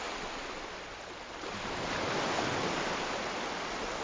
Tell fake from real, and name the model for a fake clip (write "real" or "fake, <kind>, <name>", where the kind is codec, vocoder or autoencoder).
real